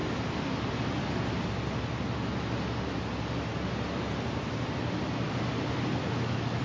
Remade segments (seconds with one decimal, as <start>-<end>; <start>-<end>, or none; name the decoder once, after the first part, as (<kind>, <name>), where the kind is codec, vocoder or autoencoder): 6.0-6.6 (autoencoder, DAC-VAE)